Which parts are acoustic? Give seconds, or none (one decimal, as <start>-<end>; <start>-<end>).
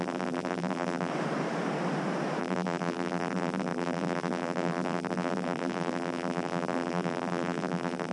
1.1-2.4